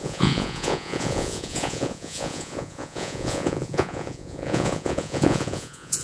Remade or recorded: remade